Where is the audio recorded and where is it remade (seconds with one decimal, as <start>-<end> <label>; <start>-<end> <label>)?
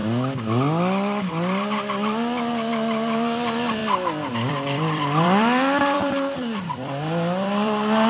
0.0-1.2 recorded; 1.2-3.8 remade; 3.8-4.3 recorded; 4.3-8.1 remade